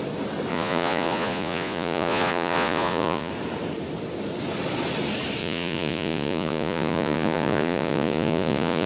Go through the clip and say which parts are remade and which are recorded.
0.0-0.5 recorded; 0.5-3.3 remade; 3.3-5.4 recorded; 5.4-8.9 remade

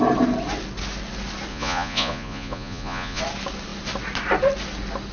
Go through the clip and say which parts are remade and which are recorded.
0.0-1.5 recorded; 1.5-3.2 remade; 3.2-5.1 recorded

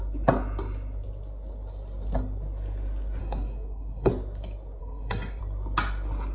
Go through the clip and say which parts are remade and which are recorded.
0.0-3.2 recorded; 3.2-4.1 remade; 4.1-4.8 recorded; 4.8-5.4 remade; 5.4-6.3 recorded

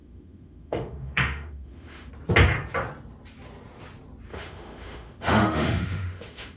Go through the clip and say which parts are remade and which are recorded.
0.0-2.1 remade; 2.1-4.3 recorded; 4.3-6.6 remade

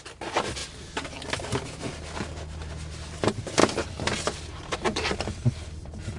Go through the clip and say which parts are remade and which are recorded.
0.0-0.6 recorded; 0.6-1.3 remade; 1.3-3.6 recorded; 3.6-6.2 remade

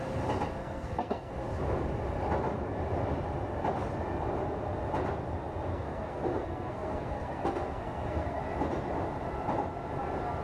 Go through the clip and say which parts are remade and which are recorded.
0.0-0.6 recorded; 0.6-1.3 remade; 1.3-5.7 recorded; 5.7-8.4 remade; 8.4-10.4 recorded